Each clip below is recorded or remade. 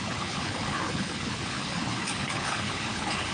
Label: remade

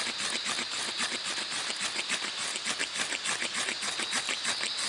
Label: recorded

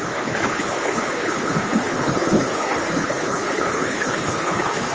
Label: remade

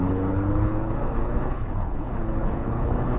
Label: remade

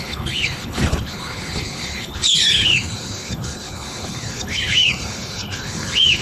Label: remade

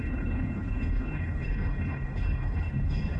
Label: remade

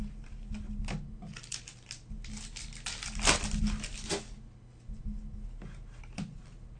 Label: recorded